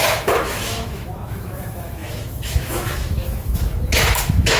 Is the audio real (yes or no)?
no